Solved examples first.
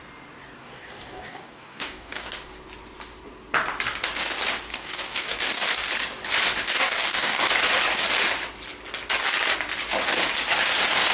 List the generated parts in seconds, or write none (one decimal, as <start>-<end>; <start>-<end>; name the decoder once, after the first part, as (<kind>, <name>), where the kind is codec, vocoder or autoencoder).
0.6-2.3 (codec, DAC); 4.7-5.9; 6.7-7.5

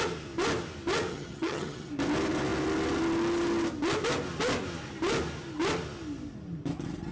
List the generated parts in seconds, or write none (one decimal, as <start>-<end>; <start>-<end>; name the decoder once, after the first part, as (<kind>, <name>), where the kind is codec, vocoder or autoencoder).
1.1-1.9 (vocoder, HiFi-GAN)

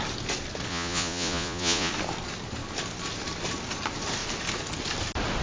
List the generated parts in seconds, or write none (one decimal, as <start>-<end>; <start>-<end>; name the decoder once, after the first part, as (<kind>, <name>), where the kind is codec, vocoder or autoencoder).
0.7-1.9 (vocoder, Vocos)

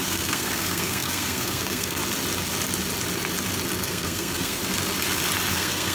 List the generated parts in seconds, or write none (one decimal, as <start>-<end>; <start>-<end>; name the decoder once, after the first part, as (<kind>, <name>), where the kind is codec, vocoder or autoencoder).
0.0-2.0 (codec, SNAC); 3.8-4.6; 5.5-5.9

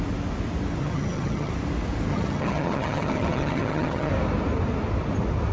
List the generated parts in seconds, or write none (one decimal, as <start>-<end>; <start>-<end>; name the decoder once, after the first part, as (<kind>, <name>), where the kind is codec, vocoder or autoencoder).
0.8-1.5 (vocoder, HiFi-GAN); 2.1-4.1